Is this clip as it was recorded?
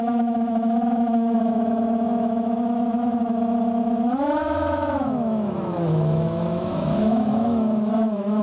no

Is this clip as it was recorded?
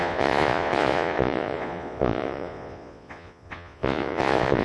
no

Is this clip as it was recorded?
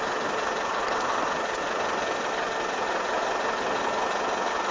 yes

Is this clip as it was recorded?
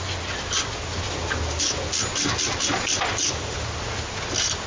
yes